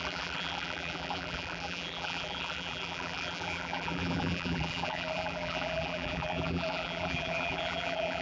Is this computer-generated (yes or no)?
yes